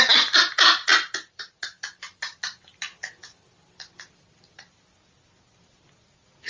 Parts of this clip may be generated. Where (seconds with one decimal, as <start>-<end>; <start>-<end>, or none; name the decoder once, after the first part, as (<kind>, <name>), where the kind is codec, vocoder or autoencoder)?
none